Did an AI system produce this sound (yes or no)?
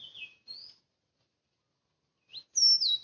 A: no